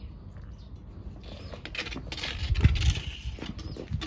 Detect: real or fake real